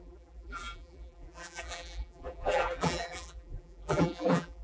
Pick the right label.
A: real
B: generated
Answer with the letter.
B